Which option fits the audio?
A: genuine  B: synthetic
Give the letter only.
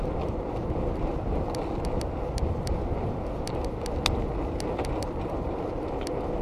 A